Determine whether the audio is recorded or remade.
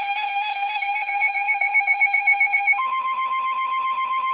remade